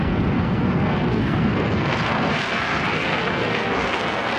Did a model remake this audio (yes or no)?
yes